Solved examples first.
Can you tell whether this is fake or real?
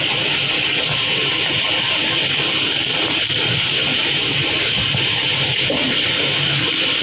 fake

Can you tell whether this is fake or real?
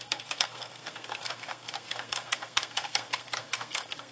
fake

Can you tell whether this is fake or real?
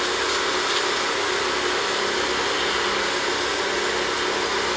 real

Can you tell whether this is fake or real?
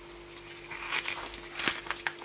real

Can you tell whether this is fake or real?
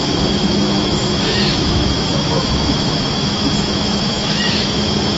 fake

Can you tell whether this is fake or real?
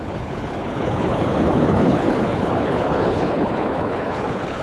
fake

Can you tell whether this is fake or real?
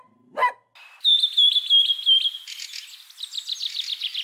real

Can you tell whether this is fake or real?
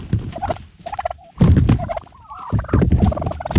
real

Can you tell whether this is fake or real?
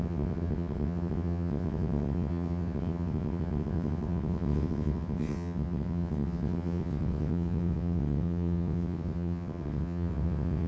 fake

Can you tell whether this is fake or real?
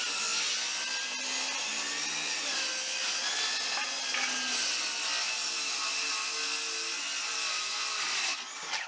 real